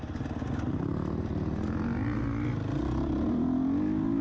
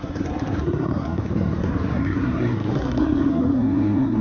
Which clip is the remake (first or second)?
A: second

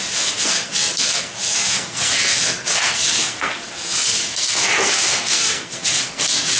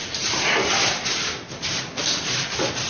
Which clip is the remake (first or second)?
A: first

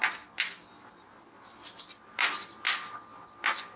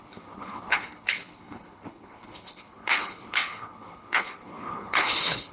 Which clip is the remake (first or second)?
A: second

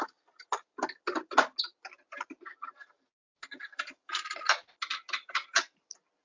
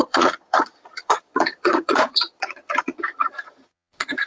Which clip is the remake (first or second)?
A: second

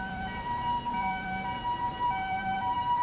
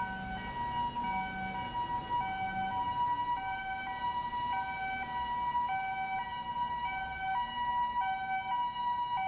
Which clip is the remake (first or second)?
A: first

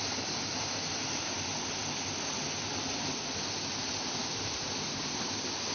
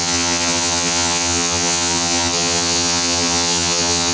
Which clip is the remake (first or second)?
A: second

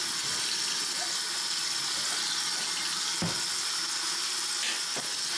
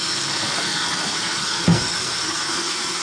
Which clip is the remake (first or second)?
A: second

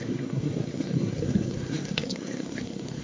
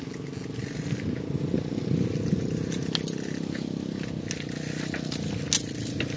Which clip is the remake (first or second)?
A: first